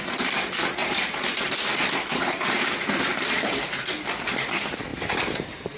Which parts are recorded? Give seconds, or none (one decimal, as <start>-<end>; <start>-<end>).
0.0-0.8; 1.5-2.1; 3.9-4.9

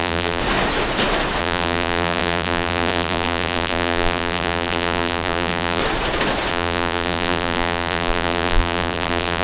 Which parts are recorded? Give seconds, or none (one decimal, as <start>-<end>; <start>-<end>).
0.4-1.4; 5.8-6.5

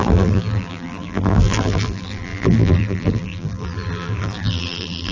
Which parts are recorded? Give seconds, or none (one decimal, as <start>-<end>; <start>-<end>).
none